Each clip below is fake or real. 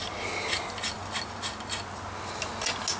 real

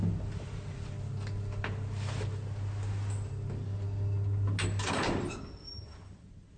real